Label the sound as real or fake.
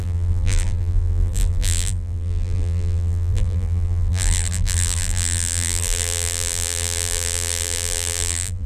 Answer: fake